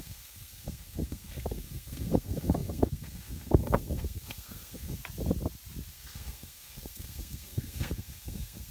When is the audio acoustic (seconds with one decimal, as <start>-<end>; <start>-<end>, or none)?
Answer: 5.0-5.9